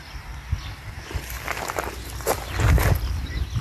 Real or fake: real